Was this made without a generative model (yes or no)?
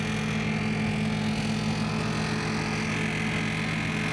yes